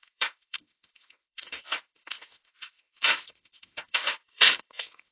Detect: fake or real fake